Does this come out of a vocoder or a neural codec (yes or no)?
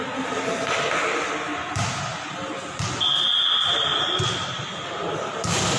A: no